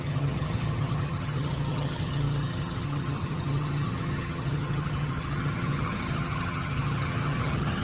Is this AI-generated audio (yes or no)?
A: yes